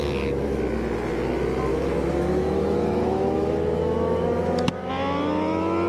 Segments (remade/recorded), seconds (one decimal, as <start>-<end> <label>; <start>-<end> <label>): 0.0-1.7 recorded; 1.7-4.9 remade; 4.9-5.9 recorded